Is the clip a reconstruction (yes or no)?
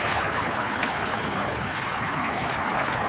yes